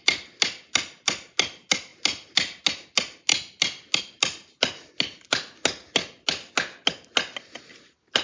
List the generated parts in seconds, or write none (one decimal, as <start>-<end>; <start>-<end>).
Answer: none